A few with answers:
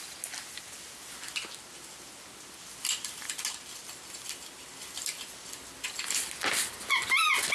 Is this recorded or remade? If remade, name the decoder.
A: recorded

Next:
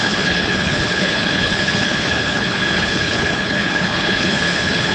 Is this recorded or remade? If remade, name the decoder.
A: remade, codec, HILCodec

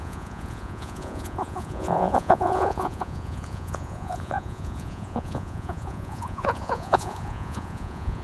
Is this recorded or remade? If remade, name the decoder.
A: remade, vocoder, Vocos